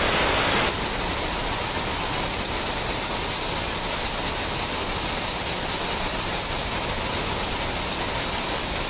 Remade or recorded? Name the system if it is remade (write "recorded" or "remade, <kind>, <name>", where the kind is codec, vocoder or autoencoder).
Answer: recorded